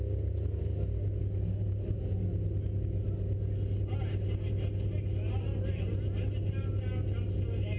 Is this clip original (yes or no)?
yes